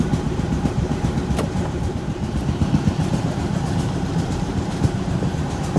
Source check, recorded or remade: remade